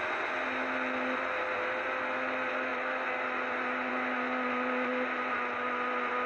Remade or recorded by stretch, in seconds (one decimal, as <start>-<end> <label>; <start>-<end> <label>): 0.0-6.3 recorded